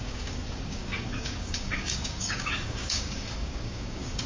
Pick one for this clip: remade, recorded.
remade